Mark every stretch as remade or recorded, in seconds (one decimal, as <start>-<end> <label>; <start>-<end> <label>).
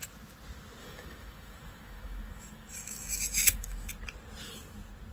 0.0-0.8 recorded; 0.8-3.9 remade; 3.9-5.1 recorded